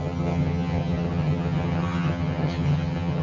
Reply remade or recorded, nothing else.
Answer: remade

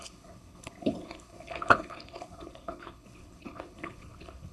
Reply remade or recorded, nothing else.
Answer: remade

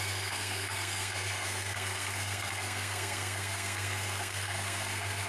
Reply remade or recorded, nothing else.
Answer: remade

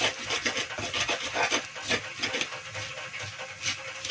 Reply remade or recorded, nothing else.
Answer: recorded